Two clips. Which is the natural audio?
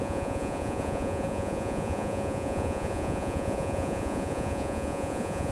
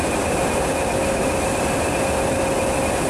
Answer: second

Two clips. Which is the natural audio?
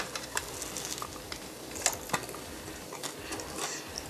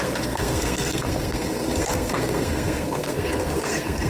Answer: first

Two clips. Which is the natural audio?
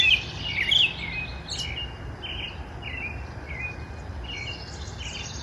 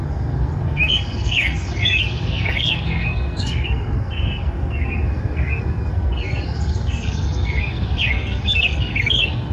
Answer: first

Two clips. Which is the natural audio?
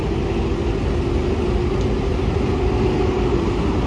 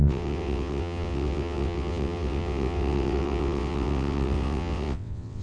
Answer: first